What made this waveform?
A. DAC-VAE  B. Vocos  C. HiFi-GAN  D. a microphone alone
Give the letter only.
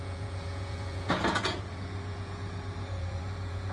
B